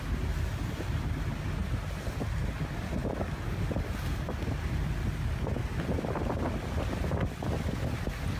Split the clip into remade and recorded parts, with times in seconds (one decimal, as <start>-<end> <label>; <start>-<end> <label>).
0.0-1.6 recorded; 1.6-2.5 remade; 2.5-3.0 recorded; 3.0-3.8 remade; 3.8-8.4 recorded